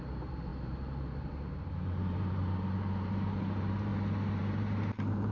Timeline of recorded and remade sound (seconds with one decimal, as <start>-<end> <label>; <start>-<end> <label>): 0.0-3.9 remade; 3.9-4.4 recorded; 4.4-5.3 remade